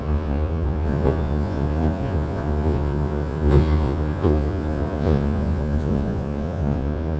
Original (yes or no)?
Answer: no